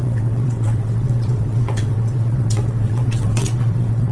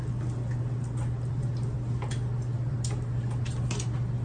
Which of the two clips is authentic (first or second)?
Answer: second